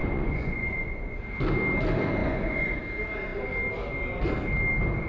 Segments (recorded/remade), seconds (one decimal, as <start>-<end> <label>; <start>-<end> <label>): 0.0-1.2 remade; 1.2-2.2 recorded; 2.2-2.8 remade; 2.8-5.1 recorded